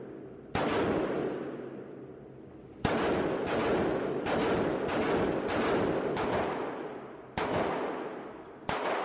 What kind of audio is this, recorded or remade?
recorded